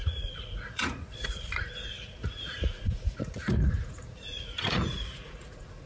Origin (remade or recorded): remade